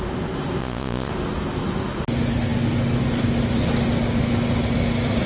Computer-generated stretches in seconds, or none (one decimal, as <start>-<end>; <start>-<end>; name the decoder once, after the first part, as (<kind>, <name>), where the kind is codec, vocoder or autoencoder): 0.6-1.1 (vocoder, Vocos)